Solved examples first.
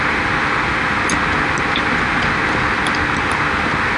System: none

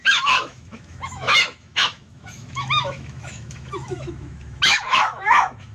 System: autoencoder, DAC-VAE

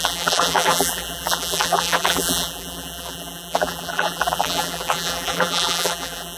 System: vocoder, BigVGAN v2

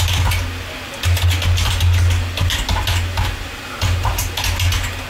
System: none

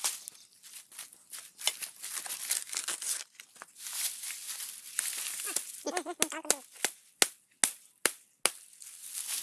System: none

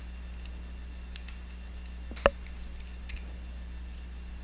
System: none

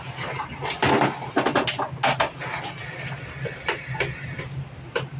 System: none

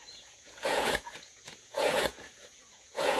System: vocoder, Vocos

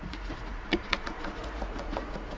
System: vocoder, Vocos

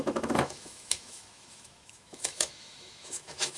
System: autoencoder, DAC-VAE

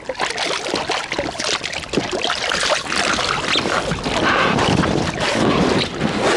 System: none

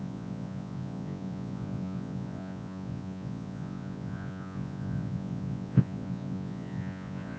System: vocoder, Vocos